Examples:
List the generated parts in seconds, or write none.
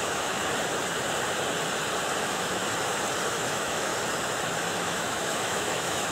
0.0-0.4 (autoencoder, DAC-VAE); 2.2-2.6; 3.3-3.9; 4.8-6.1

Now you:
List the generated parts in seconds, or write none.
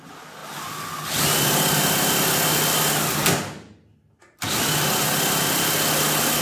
none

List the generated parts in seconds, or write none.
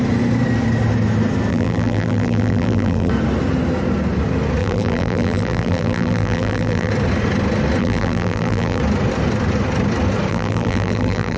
1.5-3.1 (vocoder, BigVGAN v2); 4.6-6.9; 7.8-8.8; 10.3-11.4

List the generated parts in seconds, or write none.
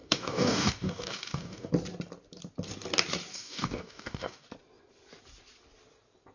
0.0-1.7 (codec, DAC); 3.3-4.5